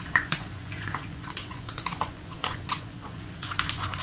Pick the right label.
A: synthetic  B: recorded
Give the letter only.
A